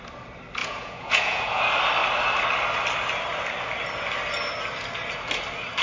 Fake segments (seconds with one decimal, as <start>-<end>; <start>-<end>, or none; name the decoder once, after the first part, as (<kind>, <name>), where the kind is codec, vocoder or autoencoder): 0.6-1.6 (vocoder, Vocos)